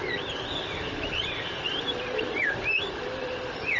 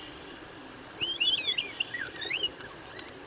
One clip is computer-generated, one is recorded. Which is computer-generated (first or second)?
first